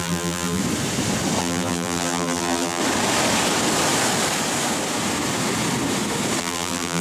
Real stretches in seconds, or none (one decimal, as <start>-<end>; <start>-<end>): 0.6-1.4; 2.8-6.4

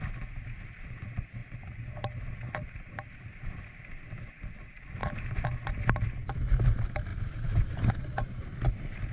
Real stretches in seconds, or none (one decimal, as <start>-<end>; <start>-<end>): 0.0-7.1; 7.9-9.1

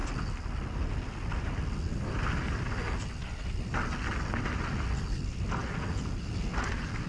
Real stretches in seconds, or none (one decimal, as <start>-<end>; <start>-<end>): 0.0-7.1

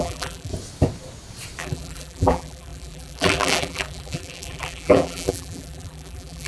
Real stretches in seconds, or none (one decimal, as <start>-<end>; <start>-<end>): 0.5-1.6

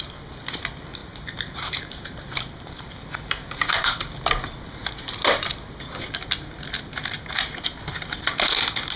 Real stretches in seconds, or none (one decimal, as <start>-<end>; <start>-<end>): 0.0-1.0; 4.0-9.0

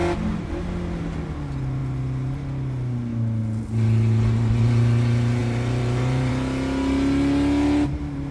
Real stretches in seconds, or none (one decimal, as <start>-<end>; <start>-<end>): 0.6-5.4; 6.3-8.3

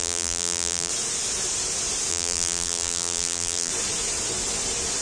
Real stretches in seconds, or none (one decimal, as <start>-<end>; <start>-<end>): 0.9-2.1; 3.7-5.0

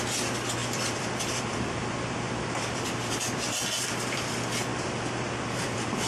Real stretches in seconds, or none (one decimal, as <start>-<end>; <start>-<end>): 0.0-0.6; 4.3-4.7